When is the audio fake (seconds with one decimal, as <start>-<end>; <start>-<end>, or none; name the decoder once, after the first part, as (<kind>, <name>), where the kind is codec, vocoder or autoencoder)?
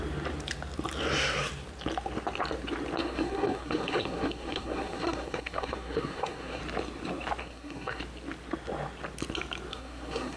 3.0-6.6 (codec, SNAC); 7.4-8.0; 9.7-10.4